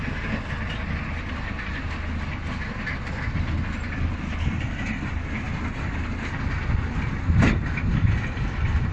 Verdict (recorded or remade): recorded